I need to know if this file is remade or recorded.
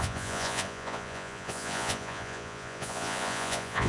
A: remade